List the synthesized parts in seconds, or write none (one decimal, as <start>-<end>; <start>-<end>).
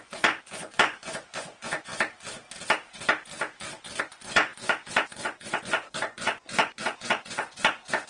0.0-1.9; 4.0-8.1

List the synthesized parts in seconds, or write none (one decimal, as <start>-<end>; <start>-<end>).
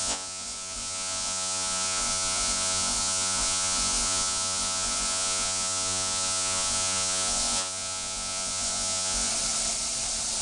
0.0-9.3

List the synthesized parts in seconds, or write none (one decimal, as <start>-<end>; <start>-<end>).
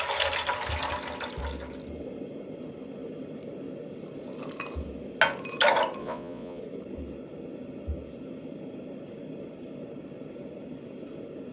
6.0-6.6